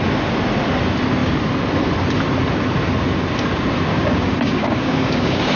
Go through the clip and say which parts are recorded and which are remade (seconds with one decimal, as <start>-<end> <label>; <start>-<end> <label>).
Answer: 0.0-3.9 recorded; 3.9-5.6 remade